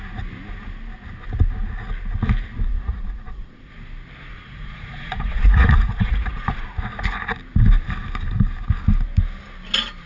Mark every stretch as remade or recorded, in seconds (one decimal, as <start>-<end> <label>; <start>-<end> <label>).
0.0-2.7 recorded; 2.7-3.7 remade; 3.7-4.3 recorded; 4.3-6.7 remade; 6.7-10.1 recorded